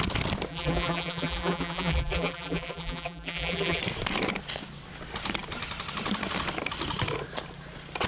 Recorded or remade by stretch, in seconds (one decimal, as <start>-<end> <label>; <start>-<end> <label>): 0.0-0.5 recorded; 0.5-3.8 remade; 3.8-8.1 recorded